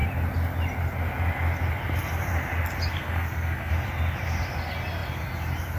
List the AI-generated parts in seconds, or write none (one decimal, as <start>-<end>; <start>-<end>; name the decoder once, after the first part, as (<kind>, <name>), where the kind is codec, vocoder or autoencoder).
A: 2.9-3.7 (codec, SNAC)